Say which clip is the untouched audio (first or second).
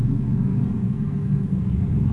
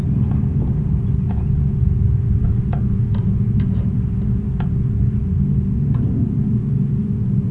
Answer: second